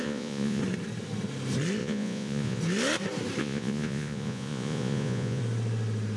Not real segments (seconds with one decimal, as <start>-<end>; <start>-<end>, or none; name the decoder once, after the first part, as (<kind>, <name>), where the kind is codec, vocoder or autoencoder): 0.0-0.6 (vocoder, Vocos); 1.8-2.6; 3.4-5.4